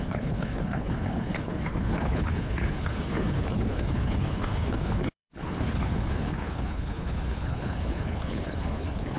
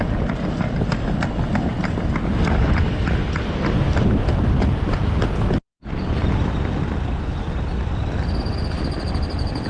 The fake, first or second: first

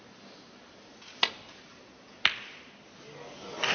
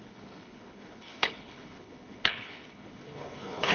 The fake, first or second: second